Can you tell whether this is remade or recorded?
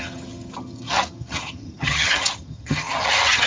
remade